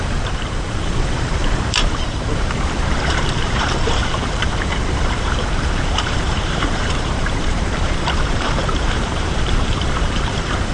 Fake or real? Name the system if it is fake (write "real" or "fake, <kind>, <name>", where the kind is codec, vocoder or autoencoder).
fake, vocoder, BigVGAN v2